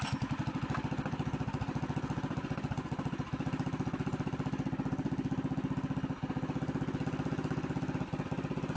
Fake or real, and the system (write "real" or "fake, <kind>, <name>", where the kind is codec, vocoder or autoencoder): real